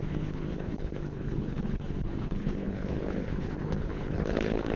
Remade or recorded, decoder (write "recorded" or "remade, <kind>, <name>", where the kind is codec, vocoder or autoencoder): remade, codec, HILCodec